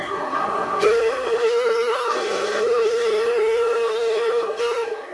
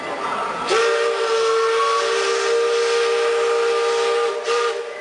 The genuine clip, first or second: second